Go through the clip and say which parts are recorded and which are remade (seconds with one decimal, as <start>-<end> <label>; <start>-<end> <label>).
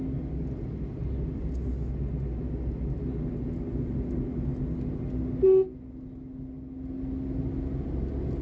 0.0-8.4 recorded